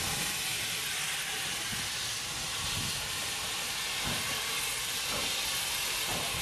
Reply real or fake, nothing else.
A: real